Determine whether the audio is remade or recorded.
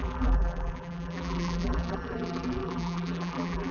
remade